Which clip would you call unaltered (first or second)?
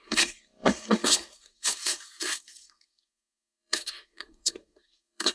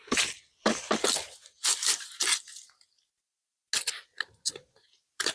second